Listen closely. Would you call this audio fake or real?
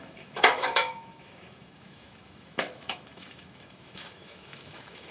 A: fake